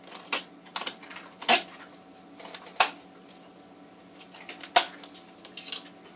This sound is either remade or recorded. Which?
recorded